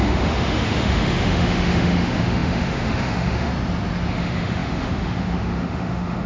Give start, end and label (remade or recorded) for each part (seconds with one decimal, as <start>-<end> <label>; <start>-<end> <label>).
0.0-3.5 remade; 3.5-4.1 recorded; 4.1-6.3 remade